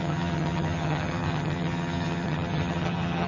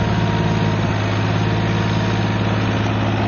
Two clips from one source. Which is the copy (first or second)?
first